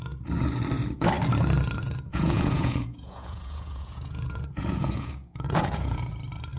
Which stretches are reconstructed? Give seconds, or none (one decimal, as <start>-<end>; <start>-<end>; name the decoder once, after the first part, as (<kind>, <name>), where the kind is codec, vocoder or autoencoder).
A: 2.1-6.1 (vocoder, Vocos)